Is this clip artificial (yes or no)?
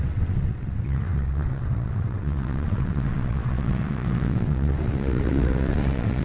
yes